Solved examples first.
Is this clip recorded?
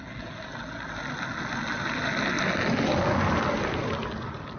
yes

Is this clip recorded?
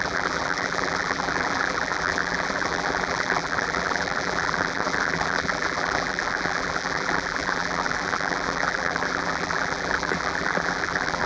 no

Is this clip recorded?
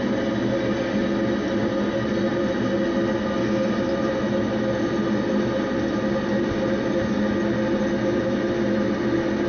yes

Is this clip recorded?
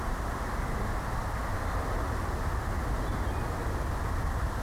yes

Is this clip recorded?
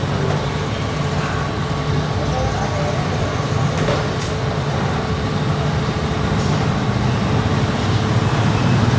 yes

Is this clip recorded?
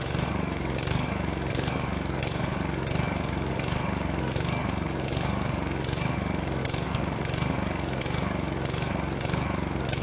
no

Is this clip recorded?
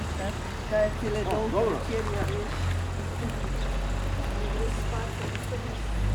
yes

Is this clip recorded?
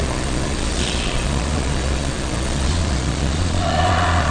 no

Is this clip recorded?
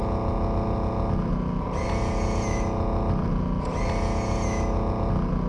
yes